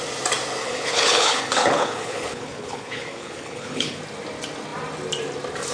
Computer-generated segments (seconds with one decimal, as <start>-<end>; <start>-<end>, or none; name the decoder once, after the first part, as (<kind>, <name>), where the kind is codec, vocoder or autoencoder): 0.6-4.0 (codec, HILCodec)